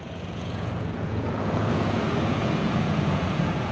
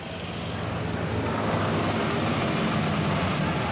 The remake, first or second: first